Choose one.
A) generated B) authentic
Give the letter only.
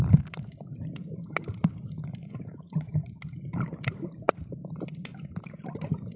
A